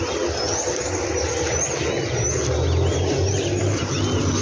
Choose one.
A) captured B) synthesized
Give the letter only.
A